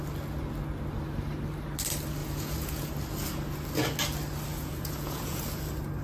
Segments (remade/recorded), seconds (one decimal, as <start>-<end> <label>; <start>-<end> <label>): 0.0-2.2 recorded; 2.2-2.9 remade; 2.9-4.5 recorded; 4.5-5.4 remade; 5.4-6.0 recorded